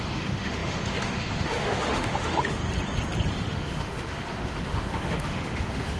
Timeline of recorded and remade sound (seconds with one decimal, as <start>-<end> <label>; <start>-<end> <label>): 0.0-2.6 remade; 2.6-3.3 recorded; 3.3-6.0 remade